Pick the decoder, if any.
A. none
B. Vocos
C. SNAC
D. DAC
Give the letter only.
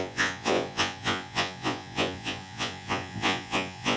B